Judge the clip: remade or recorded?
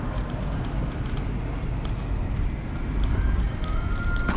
recorded